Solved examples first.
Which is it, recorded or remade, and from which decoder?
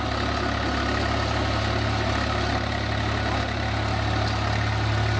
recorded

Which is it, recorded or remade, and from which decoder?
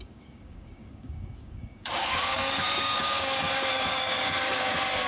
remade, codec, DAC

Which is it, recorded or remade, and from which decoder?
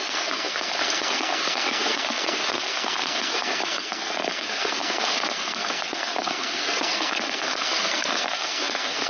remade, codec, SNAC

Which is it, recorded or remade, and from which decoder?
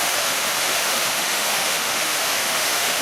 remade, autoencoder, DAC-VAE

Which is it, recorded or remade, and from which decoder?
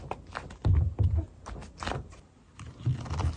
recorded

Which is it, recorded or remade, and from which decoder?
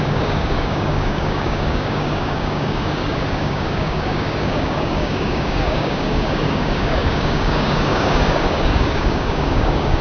remade, codec, DAC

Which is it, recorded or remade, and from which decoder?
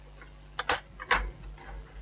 recorded